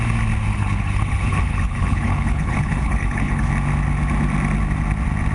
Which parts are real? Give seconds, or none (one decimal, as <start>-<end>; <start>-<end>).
0.0-0.5; 3.5-5.3